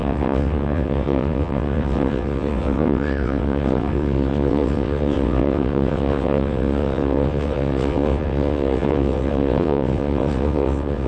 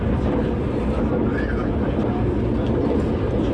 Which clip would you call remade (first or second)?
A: first